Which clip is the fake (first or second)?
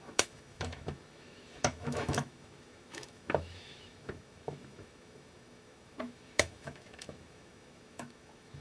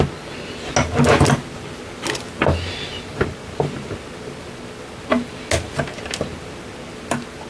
first